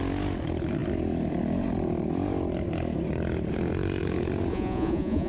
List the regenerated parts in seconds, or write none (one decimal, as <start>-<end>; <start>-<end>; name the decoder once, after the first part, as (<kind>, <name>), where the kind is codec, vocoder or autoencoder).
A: 4.5-5.3 (vocoder, Vocos)